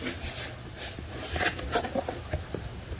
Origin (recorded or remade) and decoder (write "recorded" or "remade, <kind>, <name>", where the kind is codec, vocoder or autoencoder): recorded